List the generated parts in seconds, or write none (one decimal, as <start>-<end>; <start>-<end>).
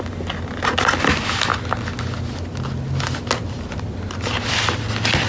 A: none